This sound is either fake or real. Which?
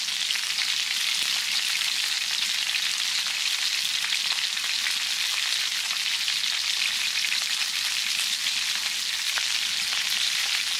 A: real